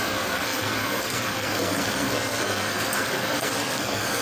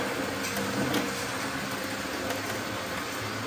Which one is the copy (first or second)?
first